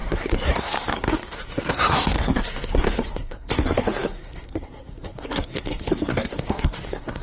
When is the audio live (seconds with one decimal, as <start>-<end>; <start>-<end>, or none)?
none